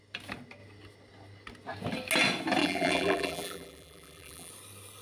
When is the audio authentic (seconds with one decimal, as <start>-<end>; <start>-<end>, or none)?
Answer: 0.0-2.6; 4.5-5.0